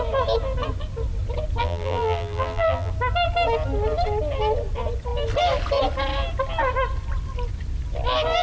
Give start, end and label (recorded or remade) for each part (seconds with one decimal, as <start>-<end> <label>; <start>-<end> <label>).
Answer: 0.0-1.6 recorded; 1.6-2.9 remade; 2.9-8.4 recorded